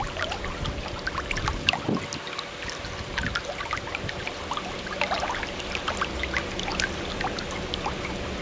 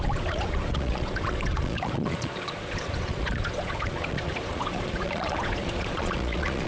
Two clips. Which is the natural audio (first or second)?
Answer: first